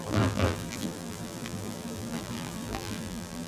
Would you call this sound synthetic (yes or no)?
yes